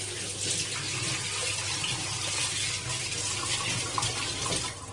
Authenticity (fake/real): real